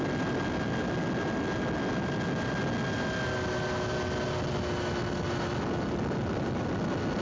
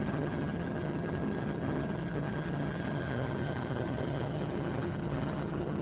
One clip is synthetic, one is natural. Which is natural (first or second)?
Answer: first